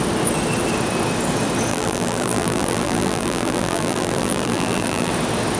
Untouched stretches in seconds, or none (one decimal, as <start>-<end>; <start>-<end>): 0.0-1.7; 5.1-5.6